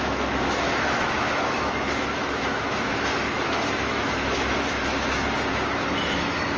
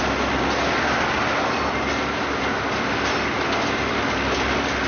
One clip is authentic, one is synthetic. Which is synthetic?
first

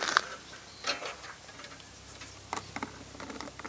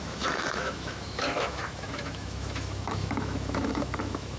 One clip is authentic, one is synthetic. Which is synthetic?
second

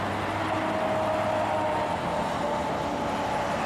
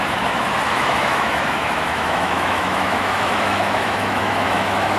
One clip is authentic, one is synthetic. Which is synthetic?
second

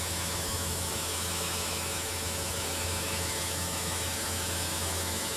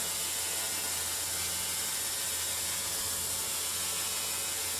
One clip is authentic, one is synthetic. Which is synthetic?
first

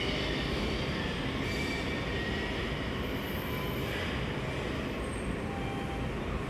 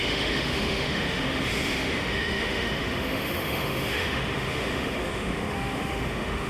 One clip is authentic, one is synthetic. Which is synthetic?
second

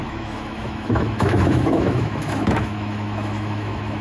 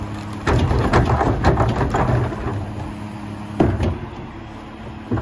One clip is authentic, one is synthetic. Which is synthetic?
first